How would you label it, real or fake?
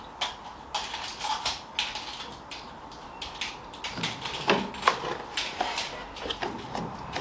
real